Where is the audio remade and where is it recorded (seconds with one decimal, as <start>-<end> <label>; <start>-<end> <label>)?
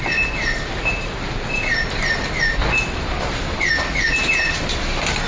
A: 0.0-5.3 recorded